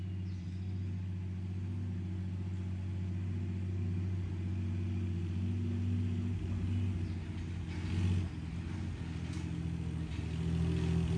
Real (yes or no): yes